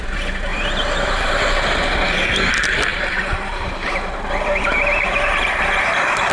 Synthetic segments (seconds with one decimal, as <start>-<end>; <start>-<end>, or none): 0.5-1.5; 2.9-6.3